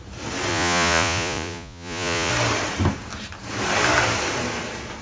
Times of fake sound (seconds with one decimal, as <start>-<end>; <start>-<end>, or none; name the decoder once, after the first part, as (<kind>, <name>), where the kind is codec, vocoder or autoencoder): 0.5-2.3 (vocoder, Vocos)